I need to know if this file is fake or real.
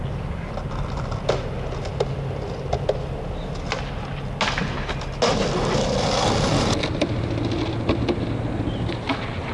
real